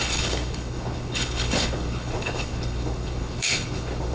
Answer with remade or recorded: remade